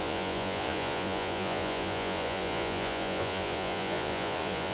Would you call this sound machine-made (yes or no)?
yes